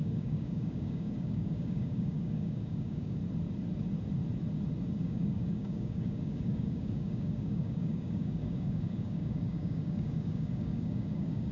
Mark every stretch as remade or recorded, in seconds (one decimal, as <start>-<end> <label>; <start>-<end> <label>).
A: 0.0-3.2 remade; 3.2-4.9 recorded; 4.9-11.5 remade